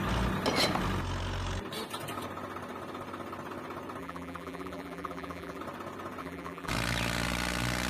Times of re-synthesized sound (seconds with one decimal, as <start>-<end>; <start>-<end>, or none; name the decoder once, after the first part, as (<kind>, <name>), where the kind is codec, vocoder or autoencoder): 4.0-5.6 (vocoder, BigVGAN v2); 6.2-6.7